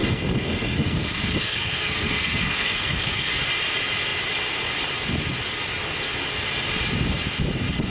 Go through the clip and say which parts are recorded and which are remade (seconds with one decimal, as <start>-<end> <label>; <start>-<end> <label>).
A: 0.0-3.3 remade; 3.3-7.9 recorded